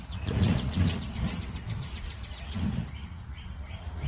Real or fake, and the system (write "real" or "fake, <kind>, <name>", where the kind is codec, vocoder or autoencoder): fake, vocoder, Vocos